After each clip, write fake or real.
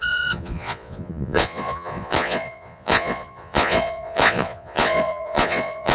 fake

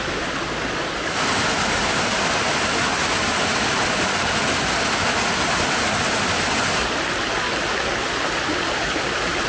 real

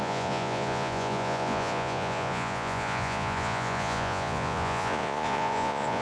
fake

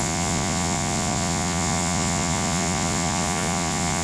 fake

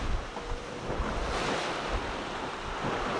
real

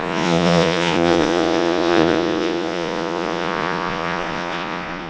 fake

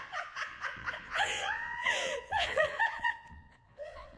fake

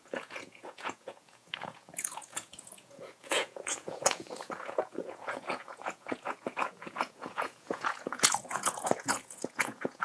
fake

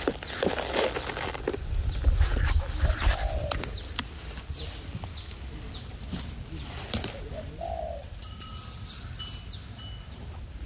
real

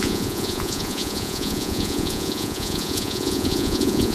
fake